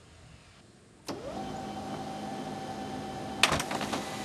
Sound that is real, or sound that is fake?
real